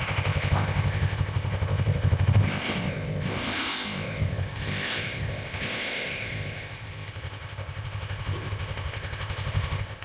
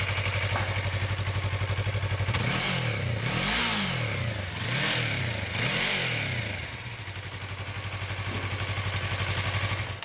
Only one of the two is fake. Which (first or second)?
first